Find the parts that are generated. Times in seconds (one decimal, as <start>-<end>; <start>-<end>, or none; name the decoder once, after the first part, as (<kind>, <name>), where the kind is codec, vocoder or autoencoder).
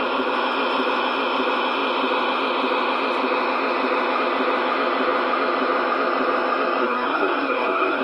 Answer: 6.8-8.0 (codec, SNAC)